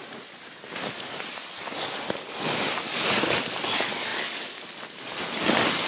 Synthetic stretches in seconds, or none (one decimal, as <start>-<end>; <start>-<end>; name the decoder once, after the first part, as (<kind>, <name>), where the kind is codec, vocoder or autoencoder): none